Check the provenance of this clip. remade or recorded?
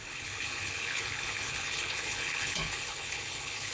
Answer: remade